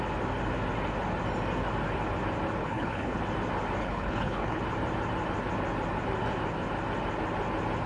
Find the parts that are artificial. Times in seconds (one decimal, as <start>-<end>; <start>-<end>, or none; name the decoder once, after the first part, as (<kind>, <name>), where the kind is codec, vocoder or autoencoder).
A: 2.6-3.2 (codec, HILCodec); 3.8-4.6